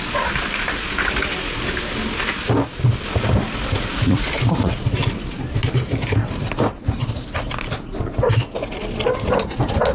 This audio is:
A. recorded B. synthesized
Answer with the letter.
A